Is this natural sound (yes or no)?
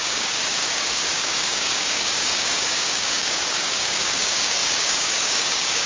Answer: no